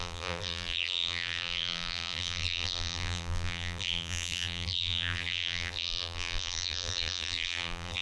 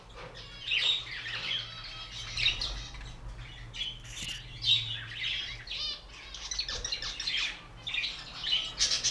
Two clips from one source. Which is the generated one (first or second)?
first